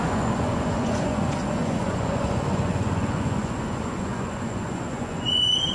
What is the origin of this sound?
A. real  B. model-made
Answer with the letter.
B